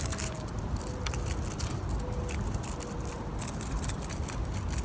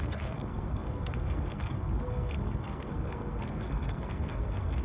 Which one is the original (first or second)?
first